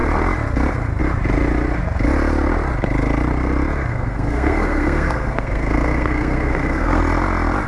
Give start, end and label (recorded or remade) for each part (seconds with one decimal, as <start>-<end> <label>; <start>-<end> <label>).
0.0-3.9 recorded; 3.9-7.0 remade; 7.0-7.7 recorded